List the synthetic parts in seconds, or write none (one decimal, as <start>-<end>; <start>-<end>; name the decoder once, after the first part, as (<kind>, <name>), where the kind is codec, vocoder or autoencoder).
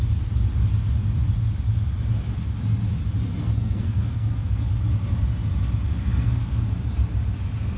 3.4-4.7 (codec, SNAC); 5.9-6.6